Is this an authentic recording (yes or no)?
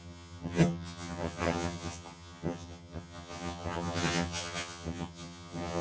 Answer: no